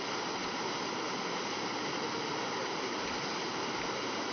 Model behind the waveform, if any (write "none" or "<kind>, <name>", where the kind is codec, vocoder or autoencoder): none